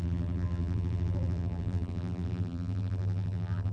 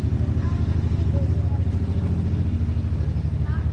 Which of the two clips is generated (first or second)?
first